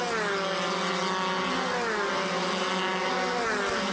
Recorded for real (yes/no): yes